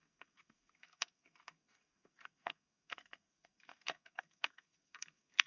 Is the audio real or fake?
fake